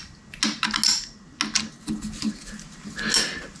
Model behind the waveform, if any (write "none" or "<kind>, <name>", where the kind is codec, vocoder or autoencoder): none